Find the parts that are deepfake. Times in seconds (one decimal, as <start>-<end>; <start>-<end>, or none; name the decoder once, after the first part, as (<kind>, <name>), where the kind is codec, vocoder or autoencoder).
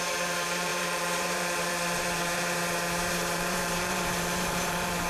0.0-5.1 (vocoder, BigVGAN v2)